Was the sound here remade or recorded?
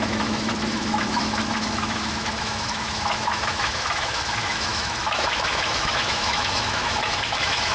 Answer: remade